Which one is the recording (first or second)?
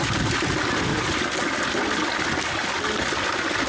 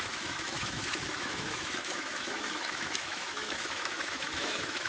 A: first